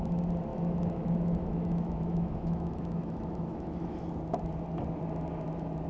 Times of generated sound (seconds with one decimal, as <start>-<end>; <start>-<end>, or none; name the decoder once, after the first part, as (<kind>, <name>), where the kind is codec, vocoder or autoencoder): 0.5-4.0 (autoencoder, DAC-VAE)